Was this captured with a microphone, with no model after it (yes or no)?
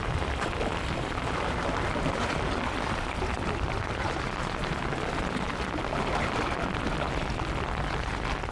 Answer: yes